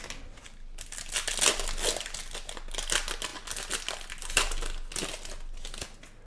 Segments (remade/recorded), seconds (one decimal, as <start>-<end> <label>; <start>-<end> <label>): 0.0-6.3 recorded